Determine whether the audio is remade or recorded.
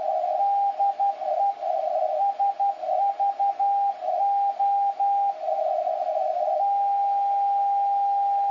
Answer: recorded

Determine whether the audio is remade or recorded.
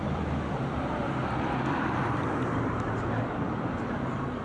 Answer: remade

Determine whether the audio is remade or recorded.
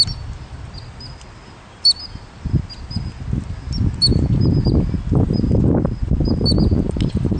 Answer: recorded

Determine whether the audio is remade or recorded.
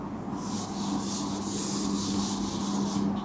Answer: recorded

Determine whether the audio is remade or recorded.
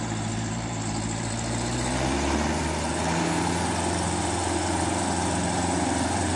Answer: remade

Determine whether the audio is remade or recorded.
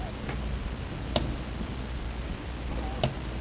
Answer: recorded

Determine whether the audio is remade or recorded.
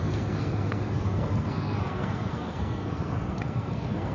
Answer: remade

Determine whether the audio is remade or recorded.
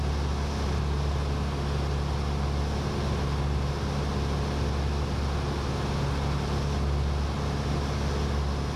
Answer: recorded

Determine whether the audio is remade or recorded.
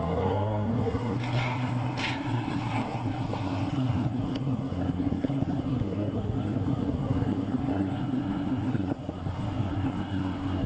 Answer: remade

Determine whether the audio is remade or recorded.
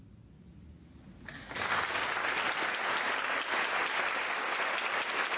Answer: recorded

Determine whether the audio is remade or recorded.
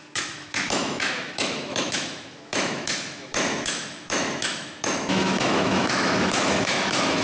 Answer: remade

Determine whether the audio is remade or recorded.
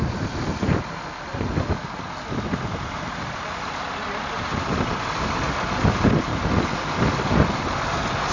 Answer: recorded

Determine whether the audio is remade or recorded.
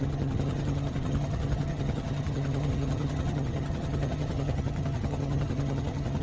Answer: remade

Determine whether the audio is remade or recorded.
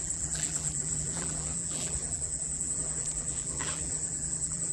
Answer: remade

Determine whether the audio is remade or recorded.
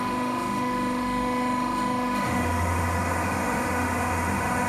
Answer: remade